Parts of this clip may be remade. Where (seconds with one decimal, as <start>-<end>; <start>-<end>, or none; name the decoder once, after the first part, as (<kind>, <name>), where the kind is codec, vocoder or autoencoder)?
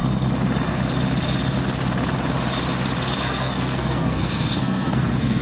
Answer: 3.2-5.4 (codec, SNAC)